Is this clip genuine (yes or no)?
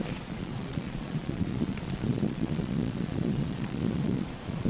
no